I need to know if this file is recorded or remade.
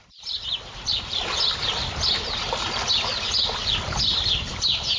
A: remade